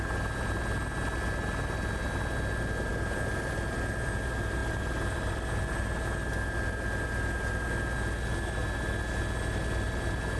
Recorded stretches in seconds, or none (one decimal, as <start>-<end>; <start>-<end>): 0.0-2.9; 4.1-4.6; 5.7-10.4